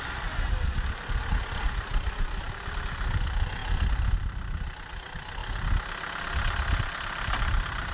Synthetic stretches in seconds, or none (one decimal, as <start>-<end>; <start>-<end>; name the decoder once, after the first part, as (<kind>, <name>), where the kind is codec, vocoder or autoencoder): 0.0-3.6 (vocoder, BigVGAN v2); 4.9-5.4; 6.8-7.9